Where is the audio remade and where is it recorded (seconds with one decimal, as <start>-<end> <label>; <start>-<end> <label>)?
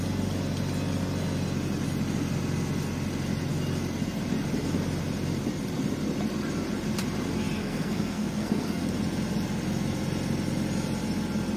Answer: 0.0-7.6 recorded; 7.6-8.9 remade; 8.9-11.6 recorded